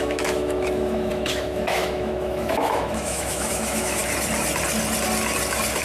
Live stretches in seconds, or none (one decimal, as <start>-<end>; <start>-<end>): 4.0-5.8